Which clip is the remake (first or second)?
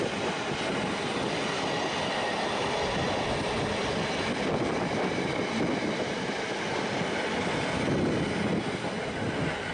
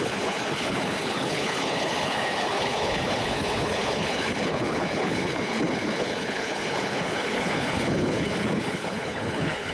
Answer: second